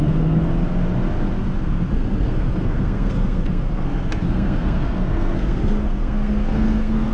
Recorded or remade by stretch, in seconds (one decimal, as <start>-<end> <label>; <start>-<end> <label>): 0.0-0.4 remade; 0.4-1.6 recorded; 1.6-7.1 remade